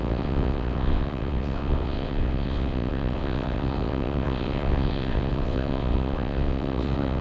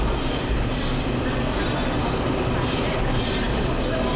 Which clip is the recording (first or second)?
second